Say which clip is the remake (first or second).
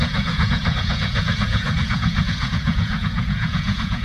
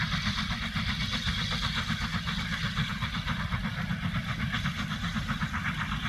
first